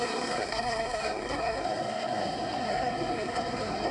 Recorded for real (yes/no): no